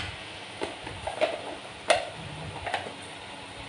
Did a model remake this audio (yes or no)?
no